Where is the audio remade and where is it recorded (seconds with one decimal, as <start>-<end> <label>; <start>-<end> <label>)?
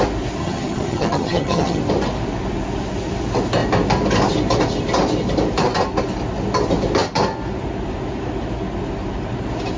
0.0-0.4 recorded; 0.4-1.8 remade; 1.8-9.8 recorded